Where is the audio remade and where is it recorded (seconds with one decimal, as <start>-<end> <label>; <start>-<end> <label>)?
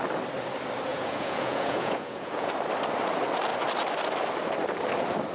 0.0-0.9 recorded; 0.9-2.5 remade; 2.5-5.3 recorded